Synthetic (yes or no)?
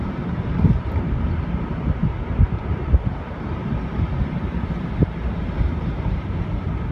yes